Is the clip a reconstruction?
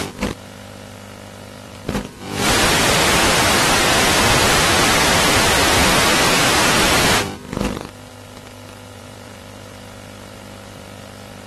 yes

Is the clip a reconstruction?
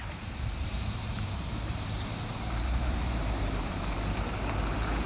yes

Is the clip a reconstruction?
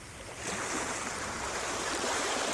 yes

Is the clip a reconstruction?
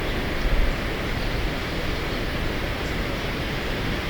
yes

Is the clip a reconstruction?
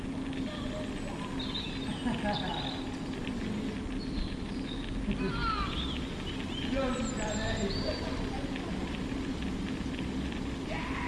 no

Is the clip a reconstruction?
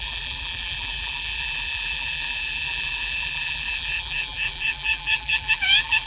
yes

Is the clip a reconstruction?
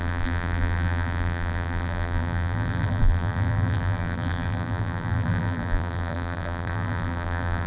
yes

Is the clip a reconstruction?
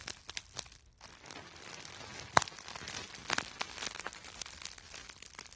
no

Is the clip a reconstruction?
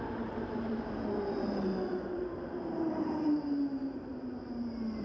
yes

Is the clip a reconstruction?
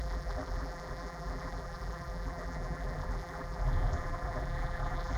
yes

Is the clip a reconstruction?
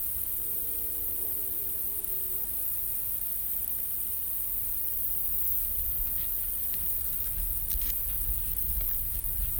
yes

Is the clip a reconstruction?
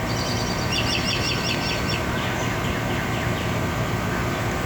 yes